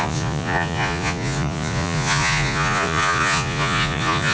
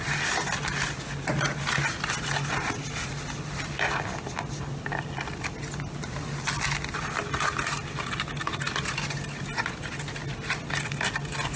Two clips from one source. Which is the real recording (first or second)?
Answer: second